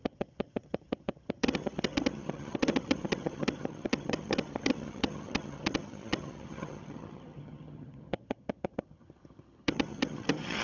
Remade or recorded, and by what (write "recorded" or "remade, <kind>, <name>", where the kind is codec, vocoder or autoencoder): remade, vocoder, HiFi-GAN